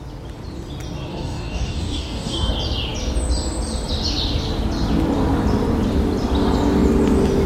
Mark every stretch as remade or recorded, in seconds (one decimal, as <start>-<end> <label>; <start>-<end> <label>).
0.0-1.1 recorded; 1.1-2.5 remade; 2.5-7.5 recorded